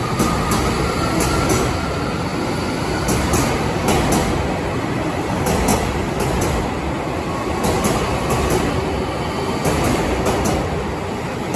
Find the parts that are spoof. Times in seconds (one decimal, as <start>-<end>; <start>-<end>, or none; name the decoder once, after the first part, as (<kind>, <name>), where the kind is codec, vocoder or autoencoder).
none